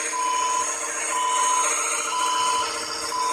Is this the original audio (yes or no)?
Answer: yes